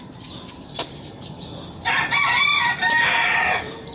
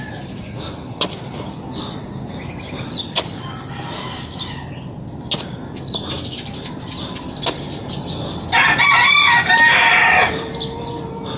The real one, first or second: second